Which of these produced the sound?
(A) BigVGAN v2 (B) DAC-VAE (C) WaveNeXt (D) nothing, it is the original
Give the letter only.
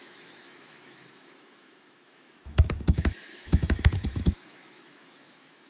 B